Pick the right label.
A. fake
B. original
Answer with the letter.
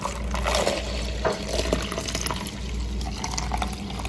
B